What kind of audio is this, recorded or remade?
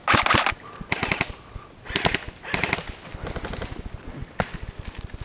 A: recorded